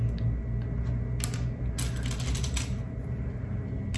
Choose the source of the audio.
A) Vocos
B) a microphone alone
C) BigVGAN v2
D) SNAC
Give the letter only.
B